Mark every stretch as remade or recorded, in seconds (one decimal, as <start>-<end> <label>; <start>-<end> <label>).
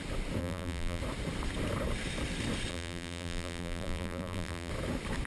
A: 0.0-0.4 recorded; 0.4-1.0 remade; 1.0-2.7 recorded; 2.7-4.7 remade; 4.7-5.3 recorded